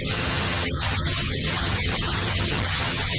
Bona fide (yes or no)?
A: no